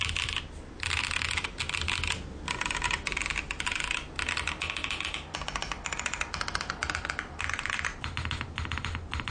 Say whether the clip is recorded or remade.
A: recorded